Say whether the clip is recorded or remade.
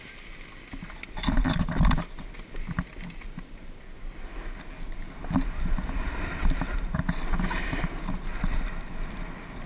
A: recorded